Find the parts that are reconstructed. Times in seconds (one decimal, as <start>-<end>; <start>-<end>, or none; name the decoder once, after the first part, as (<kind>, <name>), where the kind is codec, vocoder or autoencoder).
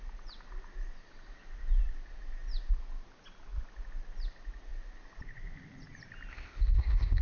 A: 6.3-7.2 (codec, ZipCodec)